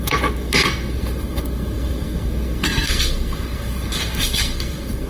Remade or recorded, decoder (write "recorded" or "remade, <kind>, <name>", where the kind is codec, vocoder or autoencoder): remade, codec, SNAC